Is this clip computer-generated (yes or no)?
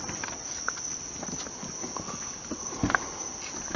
no